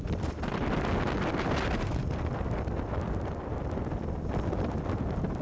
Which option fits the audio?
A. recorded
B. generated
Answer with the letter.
A